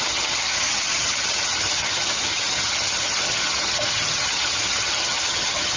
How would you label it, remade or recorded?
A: remade